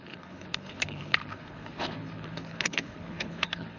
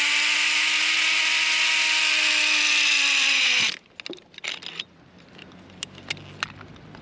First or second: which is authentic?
second